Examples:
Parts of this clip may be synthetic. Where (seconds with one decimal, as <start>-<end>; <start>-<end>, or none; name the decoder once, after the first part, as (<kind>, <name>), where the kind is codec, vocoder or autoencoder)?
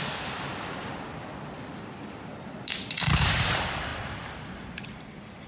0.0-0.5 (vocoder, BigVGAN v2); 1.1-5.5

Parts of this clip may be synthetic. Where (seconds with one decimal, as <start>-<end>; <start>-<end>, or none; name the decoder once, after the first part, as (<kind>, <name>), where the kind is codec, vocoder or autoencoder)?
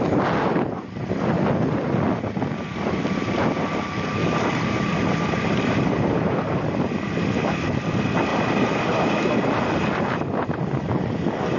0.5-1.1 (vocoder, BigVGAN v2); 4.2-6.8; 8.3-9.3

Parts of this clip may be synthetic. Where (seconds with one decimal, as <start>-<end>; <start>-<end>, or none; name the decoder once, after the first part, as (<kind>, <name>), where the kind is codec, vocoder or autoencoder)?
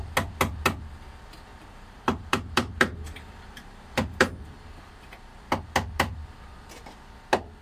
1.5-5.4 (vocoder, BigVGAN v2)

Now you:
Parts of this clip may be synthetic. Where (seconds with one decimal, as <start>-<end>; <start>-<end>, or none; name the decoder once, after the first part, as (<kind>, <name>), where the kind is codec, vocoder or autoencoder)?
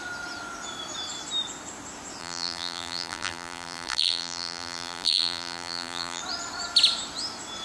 2.2-6.2 (vocoder, BigVGAN v2)